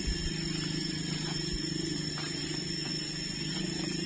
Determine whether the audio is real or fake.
real